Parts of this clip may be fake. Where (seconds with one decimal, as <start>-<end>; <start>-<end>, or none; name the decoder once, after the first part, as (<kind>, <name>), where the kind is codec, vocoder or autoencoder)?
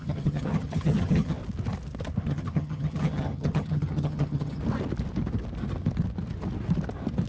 0.0-1.4 (vocoder, HiFi-GAN); 2.2-4.6